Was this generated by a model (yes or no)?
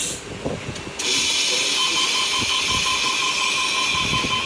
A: no